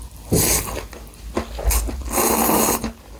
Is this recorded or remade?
recorded